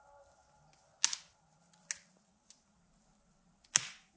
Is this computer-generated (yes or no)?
no